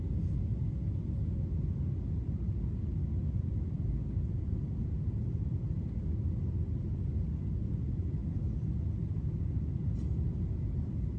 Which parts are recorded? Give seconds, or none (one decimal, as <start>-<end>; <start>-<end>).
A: 0.0-11.2